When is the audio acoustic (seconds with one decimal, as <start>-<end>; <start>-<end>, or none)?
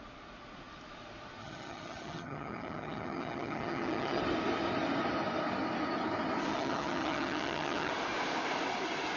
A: 0.0-1.4; 4.2-6.5; 7.9-9.2